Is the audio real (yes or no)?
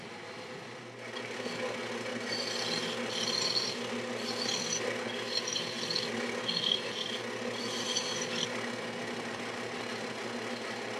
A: yes